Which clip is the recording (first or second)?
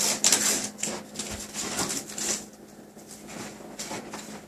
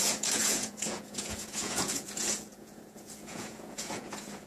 first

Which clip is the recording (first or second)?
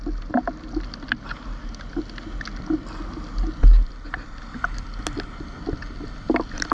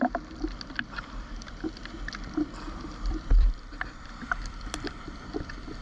first